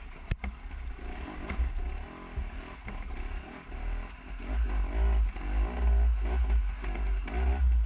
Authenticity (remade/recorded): recorded